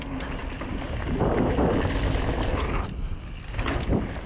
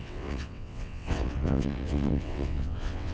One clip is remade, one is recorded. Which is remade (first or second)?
second